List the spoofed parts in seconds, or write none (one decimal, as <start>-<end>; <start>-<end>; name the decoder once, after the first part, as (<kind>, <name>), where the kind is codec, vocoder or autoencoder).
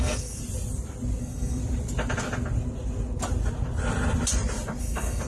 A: 0.0-0.4 (codec, SNAC); 1.2-1.6; 4.8-5.3